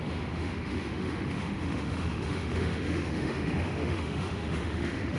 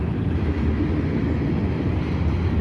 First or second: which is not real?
first